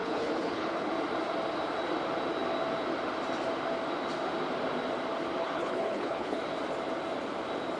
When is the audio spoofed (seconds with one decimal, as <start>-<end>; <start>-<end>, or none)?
0.0-0.9; 5.4-6.4